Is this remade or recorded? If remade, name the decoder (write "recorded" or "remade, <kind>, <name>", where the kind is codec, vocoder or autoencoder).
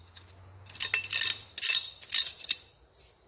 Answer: recorded